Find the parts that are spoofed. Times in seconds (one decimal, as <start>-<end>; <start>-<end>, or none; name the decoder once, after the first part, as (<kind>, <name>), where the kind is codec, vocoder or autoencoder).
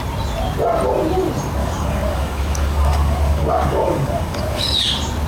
1.6-4.8 (codec, DAC)